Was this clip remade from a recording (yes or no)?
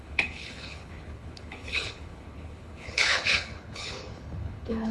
yes